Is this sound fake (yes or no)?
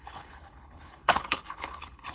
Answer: yes